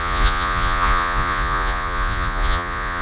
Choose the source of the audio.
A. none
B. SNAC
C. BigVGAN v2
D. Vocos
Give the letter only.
D